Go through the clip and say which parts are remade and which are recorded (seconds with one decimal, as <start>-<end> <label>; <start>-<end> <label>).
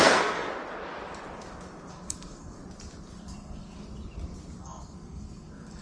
0.0-0.5 remade; 0.5-1.9 recorded; 1.9-2.6 remade; 2.6-3.2 recorded; 3.2-3.8 remade; 3.8-4.6 recorded; 4.6-5.8 remade